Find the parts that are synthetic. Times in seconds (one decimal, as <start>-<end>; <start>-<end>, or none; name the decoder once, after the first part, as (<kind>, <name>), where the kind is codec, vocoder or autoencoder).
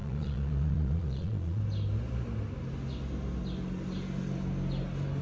0.0-1.6 (vocoder, Vocos)